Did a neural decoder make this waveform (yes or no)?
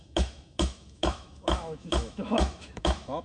yes